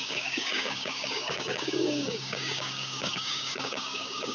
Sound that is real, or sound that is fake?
fake